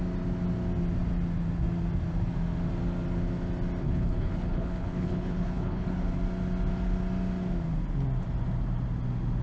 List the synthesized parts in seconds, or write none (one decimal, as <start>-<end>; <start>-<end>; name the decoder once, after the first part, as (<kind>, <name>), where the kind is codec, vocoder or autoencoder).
3.8-6.2 (codec, HILCodec)